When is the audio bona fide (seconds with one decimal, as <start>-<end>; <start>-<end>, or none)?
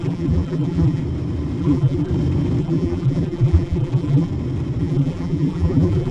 1.0-1.6; 2.1-2.6; 4.3-4.8